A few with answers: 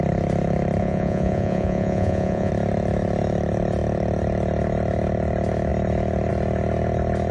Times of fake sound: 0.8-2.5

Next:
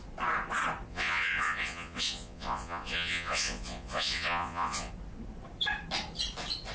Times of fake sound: 0.9-4.9

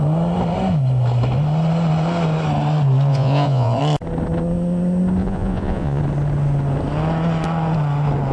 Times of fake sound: 3.1-3.8; 5.2-6.0

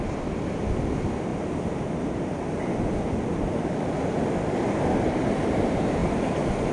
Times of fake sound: none